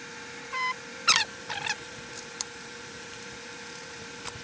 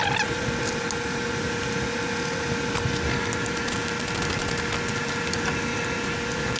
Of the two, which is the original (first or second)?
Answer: second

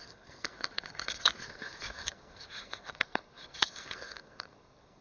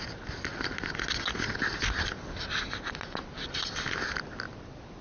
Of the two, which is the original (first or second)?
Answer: second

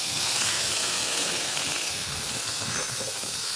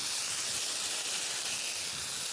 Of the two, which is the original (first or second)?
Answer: second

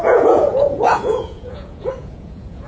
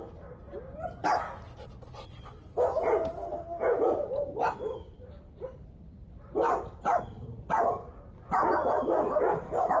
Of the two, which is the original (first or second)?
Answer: second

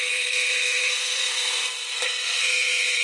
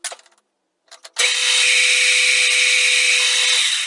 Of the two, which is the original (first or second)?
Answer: second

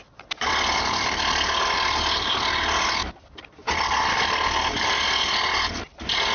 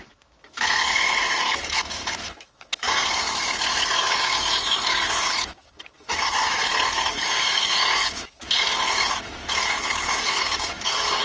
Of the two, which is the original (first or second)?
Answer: first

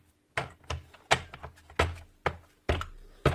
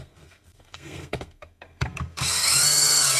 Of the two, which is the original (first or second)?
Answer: first